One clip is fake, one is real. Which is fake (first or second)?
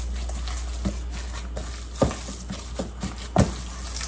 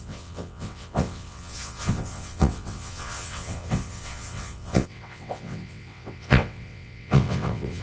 second